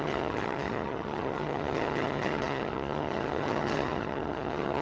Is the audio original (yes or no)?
no